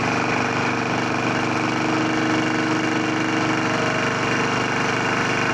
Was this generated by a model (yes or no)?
no